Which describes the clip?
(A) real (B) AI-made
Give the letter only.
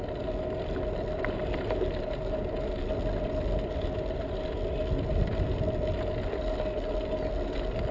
A